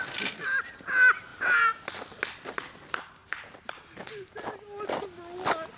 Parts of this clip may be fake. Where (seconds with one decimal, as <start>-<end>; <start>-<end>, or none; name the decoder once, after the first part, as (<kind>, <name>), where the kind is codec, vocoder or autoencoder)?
1.3-1.8 (vocoder, BigVGAN v2); 3.2-4.2